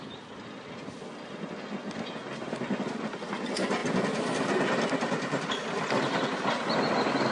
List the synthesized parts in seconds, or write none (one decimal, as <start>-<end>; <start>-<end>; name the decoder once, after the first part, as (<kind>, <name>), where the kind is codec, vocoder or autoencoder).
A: none